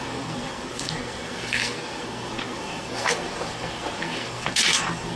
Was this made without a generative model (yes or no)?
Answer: no